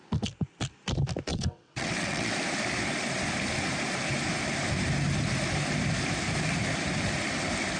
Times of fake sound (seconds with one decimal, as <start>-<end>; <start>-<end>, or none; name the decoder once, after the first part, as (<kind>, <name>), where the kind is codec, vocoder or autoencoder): 1.3-2.3 (vocoder, WaveNeXt)

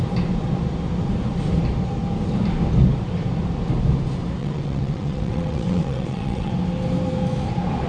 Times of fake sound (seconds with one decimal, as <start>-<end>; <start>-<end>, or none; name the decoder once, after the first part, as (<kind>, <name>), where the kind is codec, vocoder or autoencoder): 4.4-6.5 (vocoder, WaveNeXt)

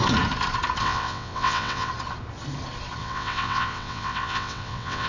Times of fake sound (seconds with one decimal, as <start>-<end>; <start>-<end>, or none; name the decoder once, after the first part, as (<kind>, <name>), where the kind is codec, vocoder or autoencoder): 0.8-1.9 (vocoder, WaveNeXt); 3.0-5.1

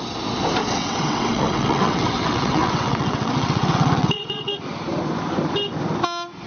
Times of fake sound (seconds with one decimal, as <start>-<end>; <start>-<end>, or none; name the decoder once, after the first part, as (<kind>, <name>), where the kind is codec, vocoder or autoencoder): 0.6-4.5 (vocoder, WaveNeXt)